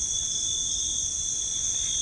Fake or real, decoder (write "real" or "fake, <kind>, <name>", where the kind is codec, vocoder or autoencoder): real